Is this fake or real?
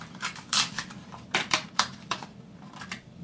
fake